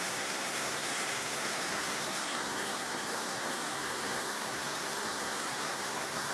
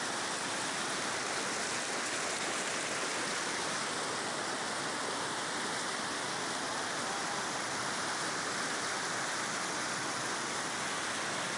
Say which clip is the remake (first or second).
first